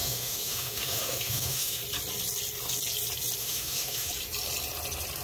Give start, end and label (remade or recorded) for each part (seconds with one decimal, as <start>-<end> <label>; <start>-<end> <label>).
0.0-1.8 remade; 1.8-3.4 recorded; 3.4-4.1 remade; 4.1-5.2 recorded